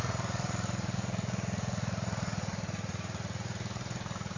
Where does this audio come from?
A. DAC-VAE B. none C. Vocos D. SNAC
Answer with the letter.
C